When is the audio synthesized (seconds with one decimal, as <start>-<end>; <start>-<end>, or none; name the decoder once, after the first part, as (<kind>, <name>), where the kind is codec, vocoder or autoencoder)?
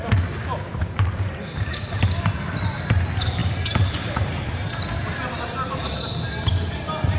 0.7-2.0 (vocoder, BigVGAN v2); 3.4-4.9